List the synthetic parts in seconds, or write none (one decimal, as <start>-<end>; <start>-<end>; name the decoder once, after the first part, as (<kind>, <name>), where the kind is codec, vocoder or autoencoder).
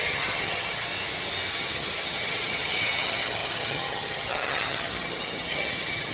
0.0-0.9 (vocoder, HiFi-GAN); 1.5-6.1